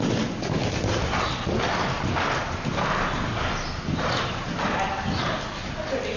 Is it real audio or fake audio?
real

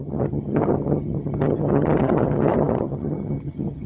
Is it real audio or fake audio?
fake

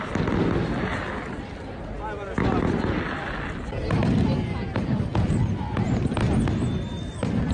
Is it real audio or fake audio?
real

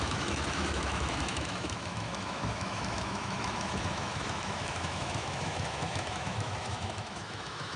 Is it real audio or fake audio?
fake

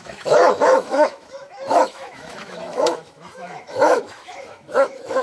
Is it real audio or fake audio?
fake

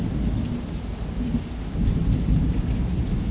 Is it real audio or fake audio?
real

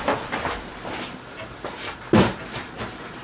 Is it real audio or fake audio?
real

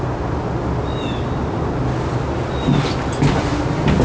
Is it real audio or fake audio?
real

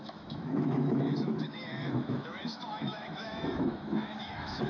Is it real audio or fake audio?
fake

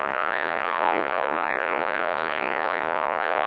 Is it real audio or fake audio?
fake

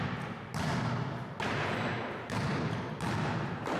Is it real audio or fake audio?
real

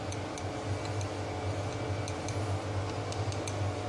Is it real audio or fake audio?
real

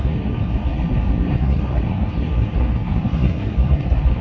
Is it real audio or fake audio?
fake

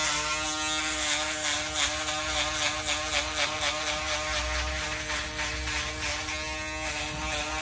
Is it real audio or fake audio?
real